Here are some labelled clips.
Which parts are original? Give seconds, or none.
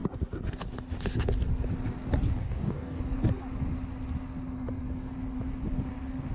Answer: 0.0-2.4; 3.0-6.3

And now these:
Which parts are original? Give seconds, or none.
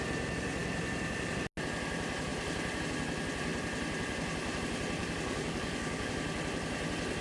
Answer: 0.0-5.0; 6.1-7.2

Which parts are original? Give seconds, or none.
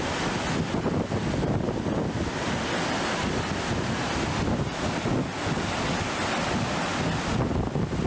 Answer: 0.0-8.1